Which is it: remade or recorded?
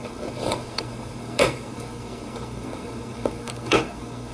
remade